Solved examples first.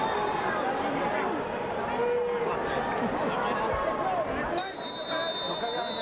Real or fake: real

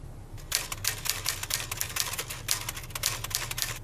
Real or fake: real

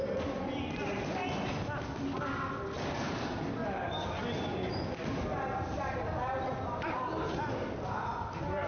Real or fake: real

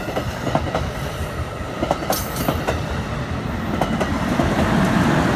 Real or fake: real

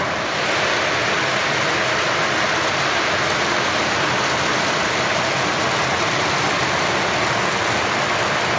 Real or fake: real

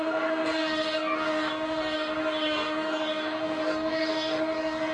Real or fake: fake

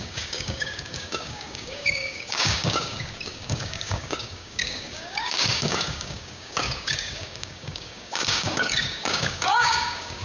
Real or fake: fake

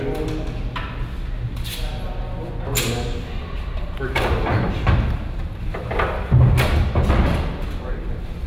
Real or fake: real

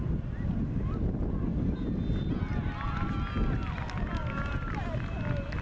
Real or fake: real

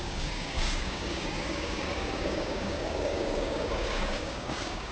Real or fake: fake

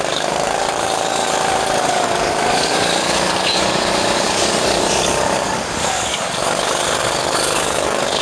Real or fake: fake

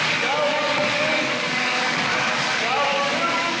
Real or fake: fake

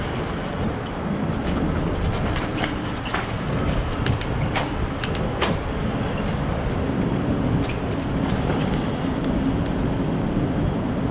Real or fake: real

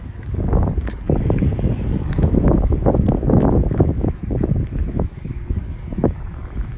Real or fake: fake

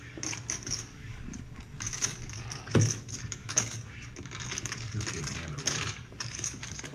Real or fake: fake